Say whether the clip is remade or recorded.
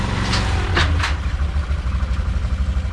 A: remade